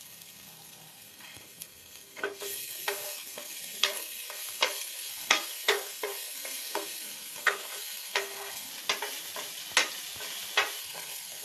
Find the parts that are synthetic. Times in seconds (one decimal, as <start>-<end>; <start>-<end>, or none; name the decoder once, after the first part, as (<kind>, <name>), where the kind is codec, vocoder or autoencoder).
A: 0.0-8.7 (codec, SNAC); 10.8-11.4